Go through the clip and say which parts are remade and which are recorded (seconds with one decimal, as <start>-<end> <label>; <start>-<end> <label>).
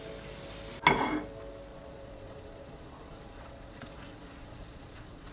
0.0-1.7 recorded; 1.7-5.3 remade